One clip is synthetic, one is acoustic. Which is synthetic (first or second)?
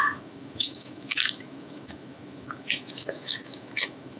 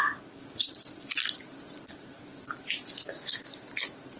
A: first